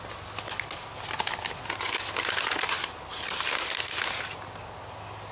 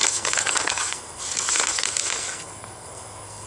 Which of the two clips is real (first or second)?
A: first